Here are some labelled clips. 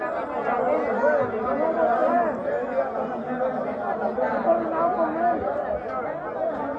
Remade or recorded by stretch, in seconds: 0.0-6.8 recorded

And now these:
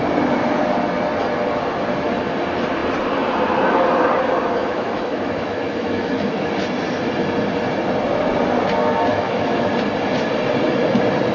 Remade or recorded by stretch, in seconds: 0.0-4.6 recorded; 4.6-6.5 remade; 6.5-9.1 recorded; 9.1-9.7 remade; 9.7-11.3 recorded